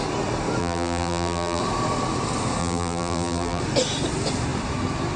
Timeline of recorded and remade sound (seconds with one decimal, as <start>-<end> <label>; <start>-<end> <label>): 0.0-0.6 recorded; 0.6-1.6 remade; 1.6-2.6 recorded; 2.6-3.6 remade; 3.6-5.2 recorded